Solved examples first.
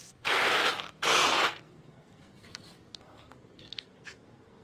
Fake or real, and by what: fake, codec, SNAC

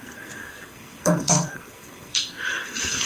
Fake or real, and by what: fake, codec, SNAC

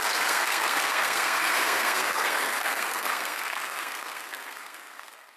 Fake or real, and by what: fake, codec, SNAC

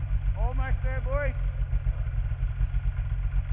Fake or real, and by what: real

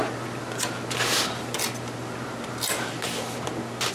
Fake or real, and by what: real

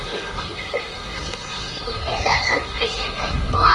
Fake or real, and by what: fake, codec, SNAC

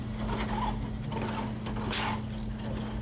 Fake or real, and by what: real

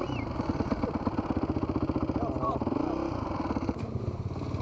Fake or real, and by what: real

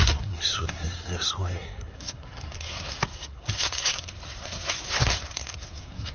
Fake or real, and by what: fake, codec, SNAC